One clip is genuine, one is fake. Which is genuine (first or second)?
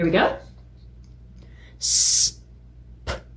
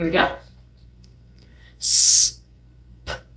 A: first